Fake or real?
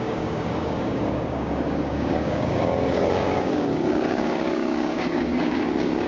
fake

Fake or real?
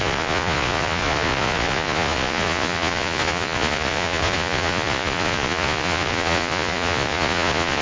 fake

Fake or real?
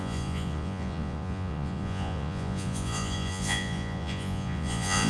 fake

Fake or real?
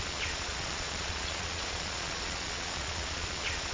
fake